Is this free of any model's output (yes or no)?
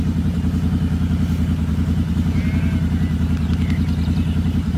yes